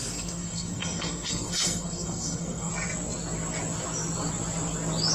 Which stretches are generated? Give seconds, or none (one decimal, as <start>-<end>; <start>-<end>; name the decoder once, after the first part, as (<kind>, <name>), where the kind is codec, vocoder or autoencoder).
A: 0.0-2.7 (codec, SNAC)